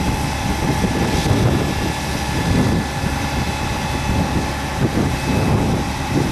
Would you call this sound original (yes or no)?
yes